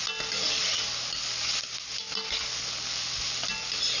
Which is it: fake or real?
real